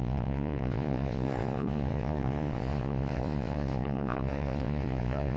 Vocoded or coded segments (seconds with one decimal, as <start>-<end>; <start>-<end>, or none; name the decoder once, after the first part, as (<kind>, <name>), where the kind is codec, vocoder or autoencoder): 0.0-5.4 (vocoder, Vocos)